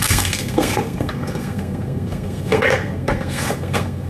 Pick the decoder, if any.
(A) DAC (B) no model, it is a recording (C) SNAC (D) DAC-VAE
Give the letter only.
C